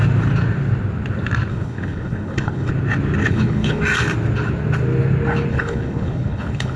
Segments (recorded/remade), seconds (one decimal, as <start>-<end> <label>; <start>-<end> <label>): 0.0-1.5 recorded; 1.5-2.7 remade; 2.7-3.2 recorded; 3.2-3.8 remade; 3.8-5.5 recorded; 5.5-6.8 remade